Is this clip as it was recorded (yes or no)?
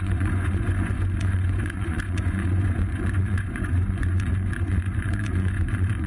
no